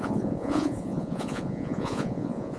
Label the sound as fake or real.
fake